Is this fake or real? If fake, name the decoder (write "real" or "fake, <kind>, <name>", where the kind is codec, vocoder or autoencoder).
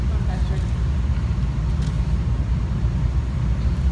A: real